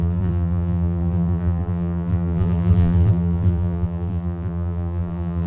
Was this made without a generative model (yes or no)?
no